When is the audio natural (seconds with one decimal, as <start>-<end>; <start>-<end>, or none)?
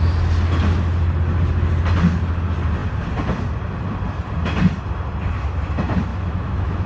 0.0-6.1